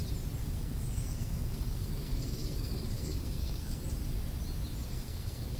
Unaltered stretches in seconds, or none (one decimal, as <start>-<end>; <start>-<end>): 0.0-0.4; 3.8-4.9